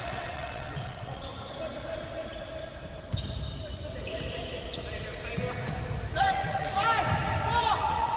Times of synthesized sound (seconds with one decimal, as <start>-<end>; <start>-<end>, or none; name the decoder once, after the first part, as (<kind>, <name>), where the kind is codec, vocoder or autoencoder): 0.0-1.3 (vocoder, WaveNeXt); 6.2-6.7; 7.6-8.2